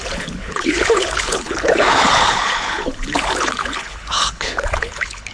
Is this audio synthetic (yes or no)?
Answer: yes